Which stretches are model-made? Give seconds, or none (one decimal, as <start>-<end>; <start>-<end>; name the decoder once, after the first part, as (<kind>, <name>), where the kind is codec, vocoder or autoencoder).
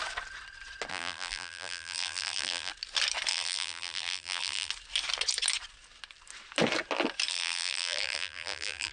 0.9-2.7 (vocoder, BigVGAN v2); 3.3-4.7; 7.3-8.9